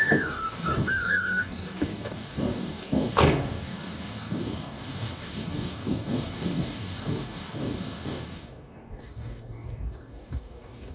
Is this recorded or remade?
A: remade